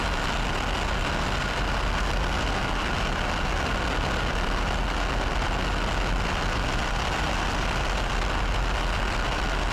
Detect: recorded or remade recorded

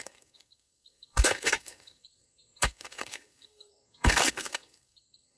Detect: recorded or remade remade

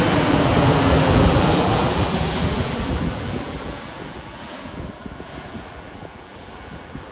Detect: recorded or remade remade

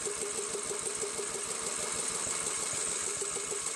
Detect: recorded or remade recorded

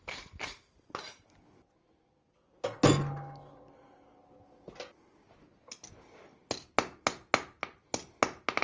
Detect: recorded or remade recorded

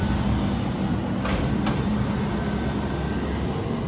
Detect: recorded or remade recorded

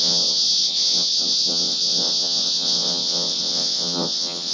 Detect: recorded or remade remade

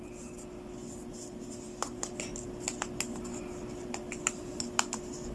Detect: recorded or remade recorded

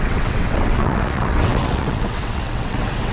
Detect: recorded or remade remade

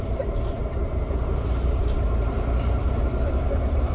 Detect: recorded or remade remade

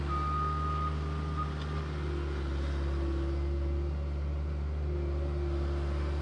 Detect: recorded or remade recorded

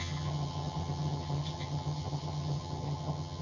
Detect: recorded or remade remade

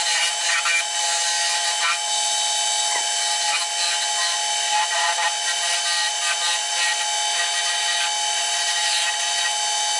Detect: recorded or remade recorded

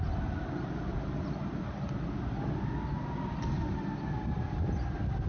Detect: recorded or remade recorded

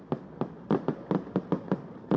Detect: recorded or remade recorded